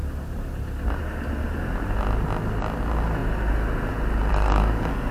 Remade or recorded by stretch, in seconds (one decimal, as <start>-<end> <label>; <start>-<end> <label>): 0.0-4.3 recorded; 4.3-5.1 remade